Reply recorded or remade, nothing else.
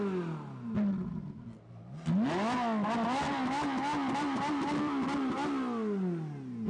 recorded